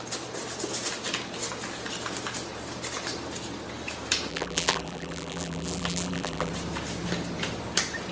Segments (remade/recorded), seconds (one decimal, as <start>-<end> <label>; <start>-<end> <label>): 0.0-4.3 recorded; 4.3-6.5 remade; 6.5-8.1 recorded